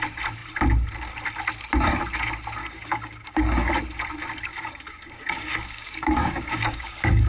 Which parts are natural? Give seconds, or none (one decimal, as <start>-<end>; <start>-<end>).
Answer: 0.0-2.6; 3.7-4.5